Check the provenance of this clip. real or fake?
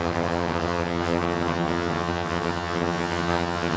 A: fake